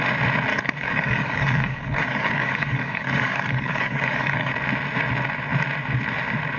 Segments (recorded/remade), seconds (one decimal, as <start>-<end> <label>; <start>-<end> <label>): 0.0-0.5 recorded; 0.5-4.5 remade; 4.5-6.6 recorded